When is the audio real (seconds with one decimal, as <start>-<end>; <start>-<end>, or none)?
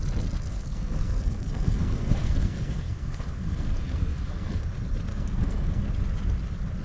0.0-0.5; 4.6-5.1; 5.8-6.8